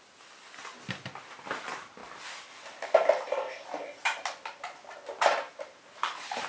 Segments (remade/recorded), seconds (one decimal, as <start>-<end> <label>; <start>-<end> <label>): 0.0-6.5 recorded